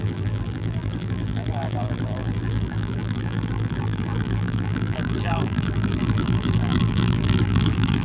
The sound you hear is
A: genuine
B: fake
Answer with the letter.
B